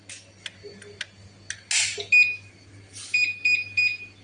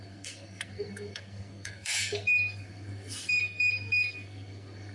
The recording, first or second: first